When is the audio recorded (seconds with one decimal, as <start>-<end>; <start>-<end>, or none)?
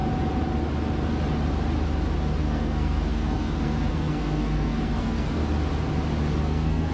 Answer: 0.0-2.4; 5.4-6.4